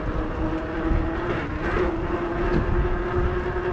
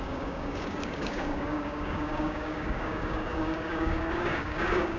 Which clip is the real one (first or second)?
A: first